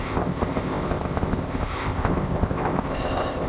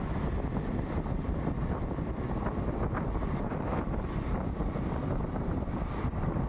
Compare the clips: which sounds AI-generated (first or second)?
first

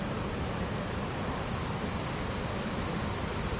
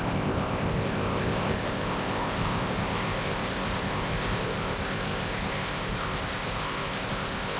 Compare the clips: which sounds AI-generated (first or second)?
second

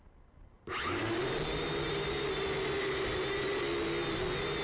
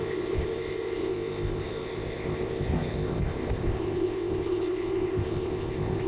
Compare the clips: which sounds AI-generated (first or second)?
second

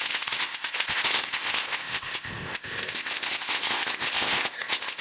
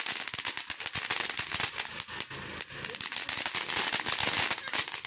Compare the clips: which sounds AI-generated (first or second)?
first